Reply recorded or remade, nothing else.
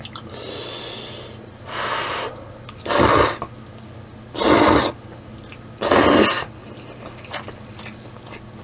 recorded